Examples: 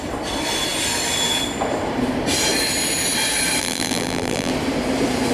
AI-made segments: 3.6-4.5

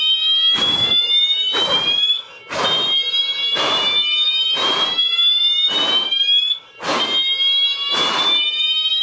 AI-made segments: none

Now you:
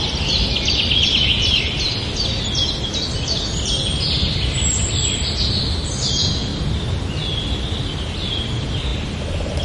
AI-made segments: none

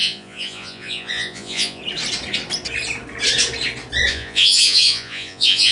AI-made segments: 0.0-1.8; 4.1-5.7

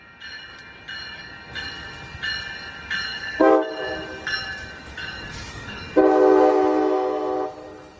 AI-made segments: 3.1-3.7; 4.9-5.8

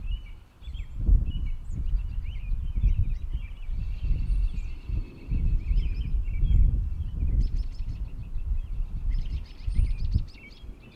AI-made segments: 3.0-4.9; 6.2-7.4; 8.2-10.1

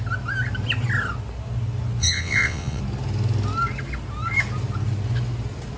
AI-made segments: 2.0-2.8

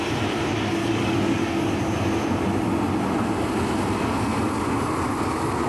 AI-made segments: 0.8-1.7